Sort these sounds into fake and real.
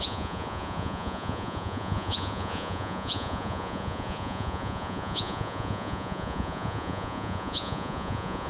fake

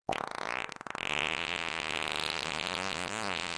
real